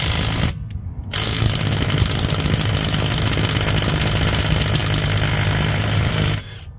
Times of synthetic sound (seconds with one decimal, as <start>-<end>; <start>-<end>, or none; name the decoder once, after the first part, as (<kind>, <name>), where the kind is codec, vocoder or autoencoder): none